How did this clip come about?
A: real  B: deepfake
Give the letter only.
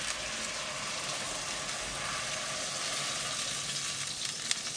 A